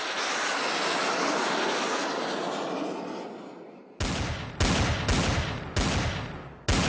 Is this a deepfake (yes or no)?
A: no